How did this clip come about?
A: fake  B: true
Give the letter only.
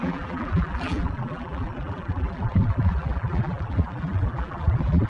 A